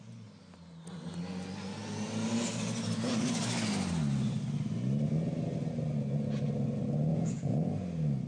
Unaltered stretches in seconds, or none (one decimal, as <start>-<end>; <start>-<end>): 0.0-7.1; 7.7-8.3